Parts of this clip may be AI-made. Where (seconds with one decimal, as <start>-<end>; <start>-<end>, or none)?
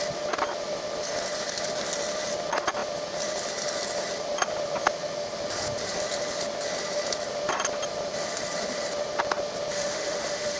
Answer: 9.7-10.6